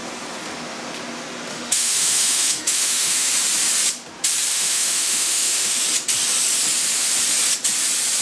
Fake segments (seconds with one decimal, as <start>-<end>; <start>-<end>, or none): 1.5-3.3; 4.5-5.8